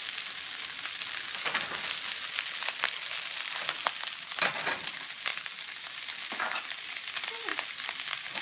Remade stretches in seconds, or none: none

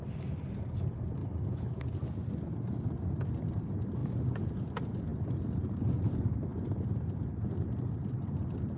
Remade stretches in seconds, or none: 0.0-1.2 (vocoder, BigVGAN v2); 3.5-4.0; 4.6-5.1; 5.8-8.8

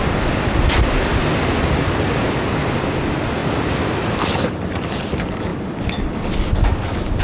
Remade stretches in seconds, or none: none

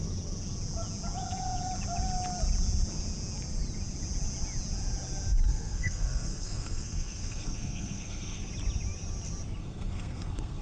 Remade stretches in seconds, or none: 5.5-8.5 (codec, SNAC); 9.6-10.6

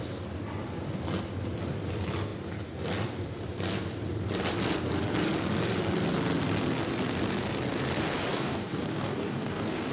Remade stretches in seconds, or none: 8.3-9.9 (codec, DAC)

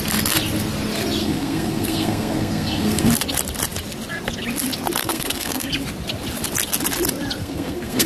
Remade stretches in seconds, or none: 1.2-3.1 (codec, SNAC); 5.0-5.7; 7.4-8.1